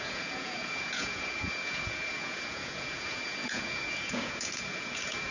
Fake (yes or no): yes